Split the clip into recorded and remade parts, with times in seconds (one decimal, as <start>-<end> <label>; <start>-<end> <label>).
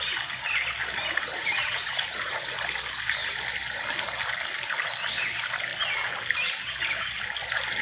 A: 0.0-1.3 recorded; 1.3-2.4 remade; 2.4-7.8 recorded